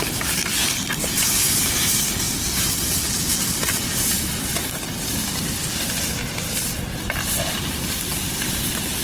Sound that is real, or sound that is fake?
real